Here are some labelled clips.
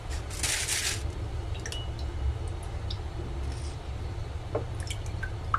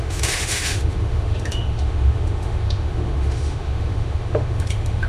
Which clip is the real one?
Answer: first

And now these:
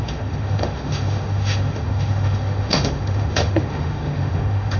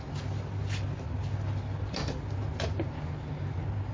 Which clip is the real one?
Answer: second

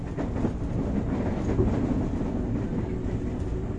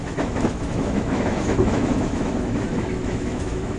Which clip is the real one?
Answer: first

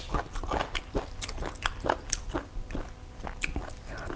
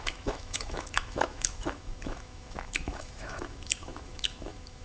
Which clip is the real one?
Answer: first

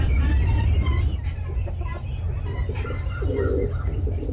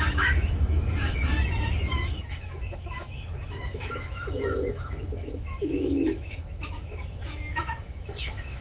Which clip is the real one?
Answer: first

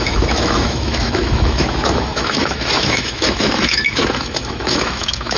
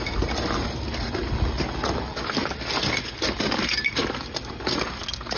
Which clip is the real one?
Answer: second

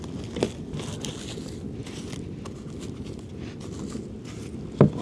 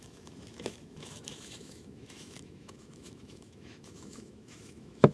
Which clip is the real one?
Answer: first